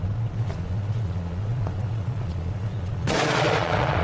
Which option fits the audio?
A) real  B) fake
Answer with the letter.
B